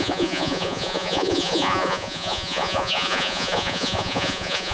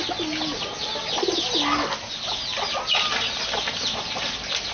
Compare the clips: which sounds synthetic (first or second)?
first